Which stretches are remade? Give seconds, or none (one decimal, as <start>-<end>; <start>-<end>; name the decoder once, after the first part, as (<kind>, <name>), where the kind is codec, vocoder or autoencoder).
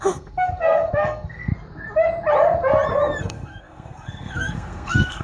0.0-1.5 (codec, SNAC); 3.2-5.2